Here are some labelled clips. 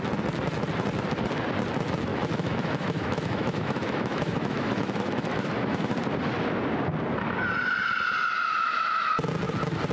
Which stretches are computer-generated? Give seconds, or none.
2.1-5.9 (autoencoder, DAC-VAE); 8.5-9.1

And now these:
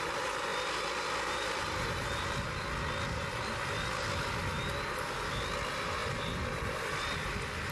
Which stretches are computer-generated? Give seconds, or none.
none

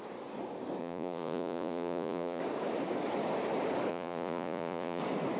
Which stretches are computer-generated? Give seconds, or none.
0.8-2.4 (vocoder, Vocos); 3.9-5.0

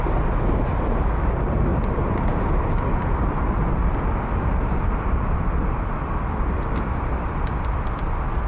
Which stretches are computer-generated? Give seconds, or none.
1.7-6.1 (vocoder, BigVGAN v2)